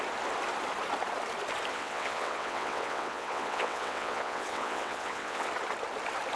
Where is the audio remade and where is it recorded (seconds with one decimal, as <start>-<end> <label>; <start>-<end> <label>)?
0.0-1.7 recorded; 1.7-5.5 remade; 5.5-6.4 recorded